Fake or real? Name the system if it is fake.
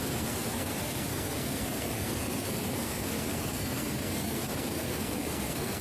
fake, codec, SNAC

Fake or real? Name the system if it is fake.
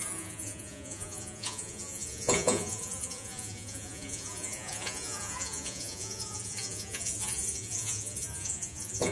fake, vocoder, Vocos